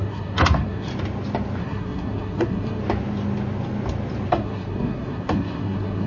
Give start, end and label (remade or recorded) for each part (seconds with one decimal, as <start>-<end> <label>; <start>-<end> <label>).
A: 0.0-0.9 remade; 0.9-1.6 recorded; 1.6-2.8 remade; 2.8-4.3 recorded; 4.3-6.1 remade